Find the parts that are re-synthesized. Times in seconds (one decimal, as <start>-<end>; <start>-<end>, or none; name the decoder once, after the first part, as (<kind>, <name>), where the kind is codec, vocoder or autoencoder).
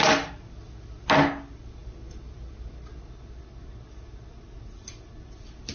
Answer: none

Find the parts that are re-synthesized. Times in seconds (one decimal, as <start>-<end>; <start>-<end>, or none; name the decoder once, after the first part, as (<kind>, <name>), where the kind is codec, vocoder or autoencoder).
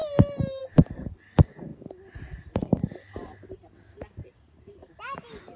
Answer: none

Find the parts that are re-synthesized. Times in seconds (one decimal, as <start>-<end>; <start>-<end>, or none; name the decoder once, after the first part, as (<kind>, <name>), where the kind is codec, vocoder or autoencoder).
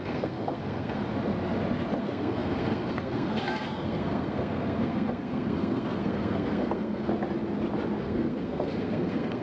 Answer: 0.0-1.0 (codec, SNAC); 2.0-7.1; 8.0-9.4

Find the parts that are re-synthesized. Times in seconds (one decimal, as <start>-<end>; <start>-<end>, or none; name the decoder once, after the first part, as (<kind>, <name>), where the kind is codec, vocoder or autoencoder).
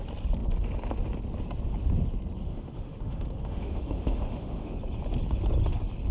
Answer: 2.4-4.7 (autoencoder, DAC-VAE)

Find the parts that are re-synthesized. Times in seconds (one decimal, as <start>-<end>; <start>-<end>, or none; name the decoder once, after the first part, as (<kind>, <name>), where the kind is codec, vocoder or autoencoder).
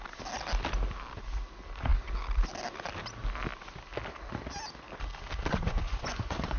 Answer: 5.5-6.6 (vocoder, Vocos)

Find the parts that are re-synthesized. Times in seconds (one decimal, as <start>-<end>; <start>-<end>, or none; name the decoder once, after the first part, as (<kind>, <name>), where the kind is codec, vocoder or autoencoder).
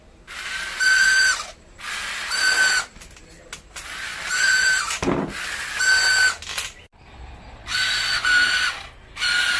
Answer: none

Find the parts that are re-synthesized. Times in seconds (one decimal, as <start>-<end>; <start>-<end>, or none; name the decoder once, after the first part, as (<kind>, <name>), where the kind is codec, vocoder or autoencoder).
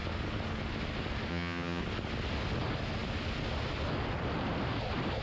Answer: 1.3-1.8 (vocoder, HiFi-GAN)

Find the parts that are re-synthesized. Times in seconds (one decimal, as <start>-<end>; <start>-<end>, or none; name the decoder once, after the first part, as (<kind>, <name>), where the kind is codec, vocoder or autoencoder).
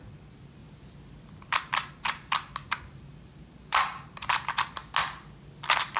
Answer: 0.0-0.6 (vocoder, BigVGAN v2); 1.9-4.8